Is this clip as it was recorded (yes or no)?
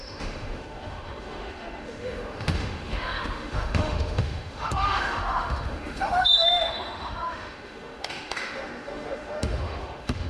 no